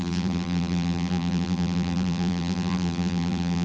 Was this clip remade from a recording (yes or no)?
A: yes